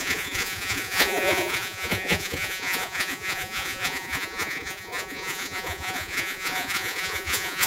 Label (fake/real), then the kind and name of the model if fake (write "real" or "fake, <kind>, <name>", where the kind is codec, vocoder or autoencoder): fake, vocoder, Vocos